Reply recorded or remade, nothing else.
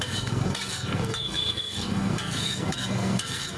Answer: remade